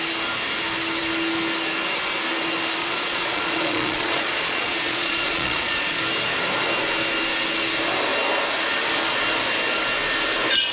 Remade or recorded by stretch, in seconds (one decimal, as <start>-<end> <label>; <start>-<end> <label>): 0.0-2.8 recorded; 2.8-6.0 remade; 6.0-10.7 recorded